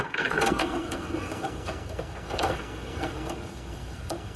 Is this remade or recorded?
remade